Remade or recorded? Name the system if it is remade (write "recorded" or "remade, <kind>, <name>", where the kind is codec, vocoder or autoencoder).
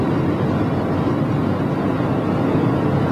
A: recorded